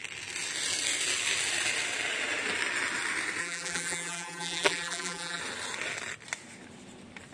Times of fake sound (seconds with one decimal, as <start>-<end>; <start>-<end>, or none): 3.4-5.4